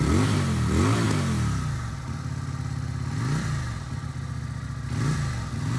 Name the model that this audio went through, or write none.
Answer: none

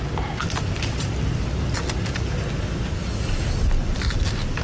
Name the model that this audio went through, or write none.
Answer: none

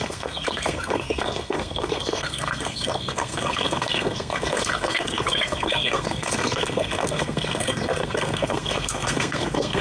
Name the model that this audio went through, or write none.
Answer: codec, SNAC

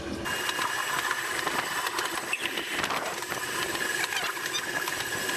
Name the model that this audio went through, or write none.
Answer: none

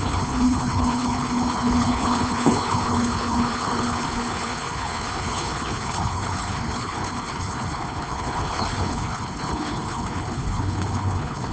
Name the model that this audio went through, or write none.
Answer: codec, HILCodec